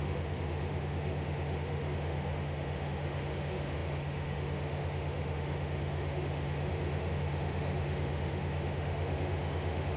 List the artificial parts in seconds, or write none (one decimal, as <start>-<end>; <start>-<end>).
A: 0.0-10.0